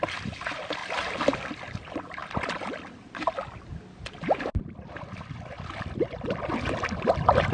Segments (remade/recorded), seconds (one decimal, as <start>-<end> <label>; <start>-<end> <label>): 0.0-7.5 recorded